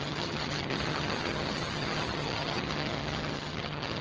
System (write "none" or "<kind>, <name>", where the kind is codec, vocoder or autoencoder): vocoder, HiFi-GAN